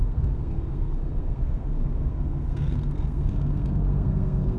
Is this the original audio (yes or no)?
no